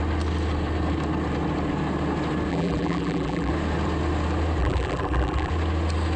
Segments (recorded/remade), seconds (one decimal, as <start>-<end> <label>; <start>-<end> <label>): 0.0-2.5 recorded; 2.5-3.5 remade; 3.5-4.6 recorded; 4.6-5.5 remade; 5.5-6.2 recorded